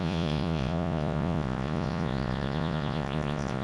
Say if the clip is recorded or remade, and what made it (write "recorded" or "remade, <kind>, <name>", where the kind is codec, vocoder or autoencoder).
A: remade, vocoder, Vocos